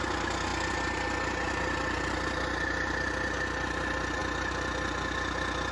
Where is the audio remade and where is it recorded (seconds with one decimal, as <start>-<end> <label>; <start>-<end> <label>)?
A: 0.0-5.7 recorded